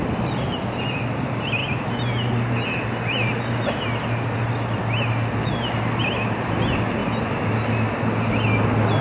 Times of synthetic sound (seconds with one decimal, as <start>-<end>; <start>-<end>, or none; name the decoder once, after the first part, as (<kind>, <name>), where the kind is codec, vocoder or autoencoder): none

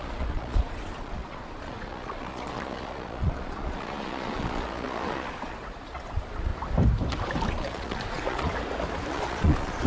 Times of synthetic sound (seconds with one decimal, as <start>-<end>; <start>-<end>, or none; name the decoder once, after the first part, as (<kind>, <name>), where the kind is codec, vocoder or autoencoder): 0.0-6.5 (vocoder, Vocos); 7.5-8.5; 9.1-9.9

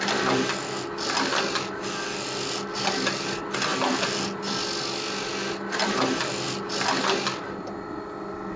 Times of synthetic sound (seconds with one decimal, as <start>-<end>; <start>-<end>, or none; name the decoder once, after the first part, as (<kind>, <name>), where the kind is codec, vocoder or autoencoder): none

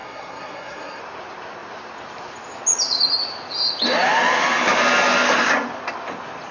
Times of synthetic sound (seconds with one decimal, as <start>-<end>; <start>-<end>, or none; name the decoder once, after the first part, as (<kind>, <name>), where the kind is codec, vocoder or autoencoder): 0.0-1.0 (codec, SNAC)

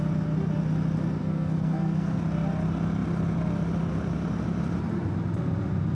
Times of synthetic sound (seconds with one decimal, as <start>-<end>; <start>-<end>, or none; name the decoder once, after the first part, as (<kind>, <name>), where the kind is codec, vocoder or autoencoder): 1.2-2.2 (codec, SNAC)